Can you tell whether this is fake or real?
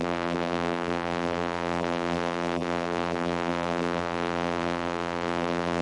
fake